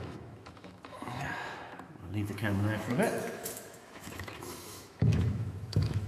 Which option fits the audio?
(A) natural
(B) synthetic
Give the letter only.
B